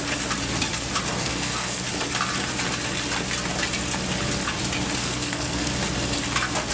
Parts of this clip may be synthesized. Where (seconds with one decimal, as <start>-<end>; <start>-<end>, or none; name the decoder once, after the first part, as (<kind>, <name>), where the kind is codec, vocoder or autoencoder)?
1.2-1.8 (codec, SNAC); 5.0-5.7

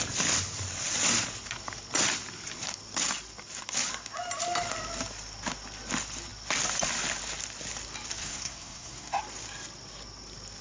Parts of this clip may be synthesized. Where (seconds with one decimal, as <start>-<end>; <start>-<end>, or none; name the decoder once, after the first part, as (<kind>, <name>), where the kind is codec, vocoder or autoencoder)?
8.2-9.2 (codec, SNAC)

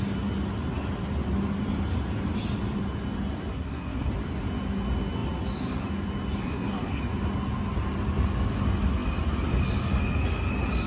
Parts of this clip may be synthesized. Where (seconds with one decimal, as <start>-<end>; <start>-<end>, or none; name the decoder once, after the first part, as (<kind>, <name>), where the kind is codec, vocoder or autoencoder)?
3.5-4.1 (codec, SNAC); 6.4-7.0

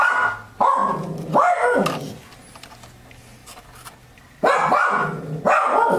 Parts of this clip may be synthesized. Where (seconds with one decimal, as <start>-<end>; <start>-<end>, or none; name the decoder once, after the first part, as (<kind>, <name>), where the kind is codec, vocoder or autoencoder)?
none

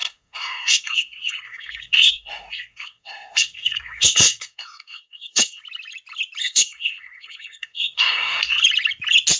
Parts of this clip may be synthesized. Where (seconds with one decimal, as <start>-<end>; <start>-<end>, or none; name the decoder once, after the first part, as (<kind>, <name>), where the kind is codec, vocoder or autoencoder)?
0.0-5.6 (codec, SNAC); 6.4-8.6

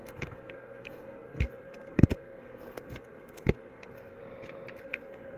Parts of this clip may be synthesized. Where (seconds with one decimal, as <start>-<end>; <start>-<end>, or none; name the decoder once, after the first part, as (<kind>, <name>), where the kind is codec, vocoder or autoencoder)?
0.0-4.2 (codec, SNAC); 4.8-5.4